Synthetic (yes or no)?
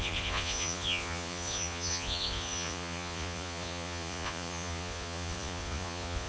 yes